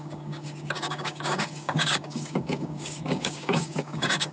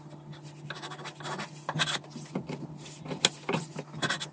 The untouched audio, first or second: second